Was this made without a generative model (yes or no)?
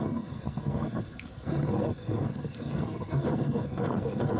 no